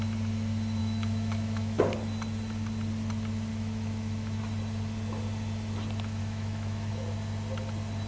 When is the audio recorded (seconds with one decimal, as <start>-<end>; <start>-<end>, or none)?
0.0-0.8; 1.8-3.5; 4.4-6.2; 6.9-8.1